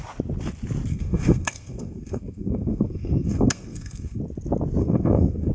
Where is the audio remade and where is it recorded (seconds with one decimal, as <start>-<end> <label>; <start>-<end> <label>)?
0.0-0.9 recorded; 0.9-4.2 remade; 4.2-4.8 recorded; 4.8-5.5 remade